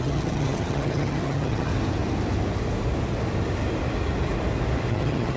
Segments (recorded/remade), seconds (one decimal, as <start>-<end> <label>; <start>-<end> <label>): 0.0-1.7 remade; 1.7-4.9 recorded; 4.9-5.4 remade